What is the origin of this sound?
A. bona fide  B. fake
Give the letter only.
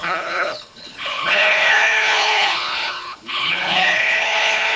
B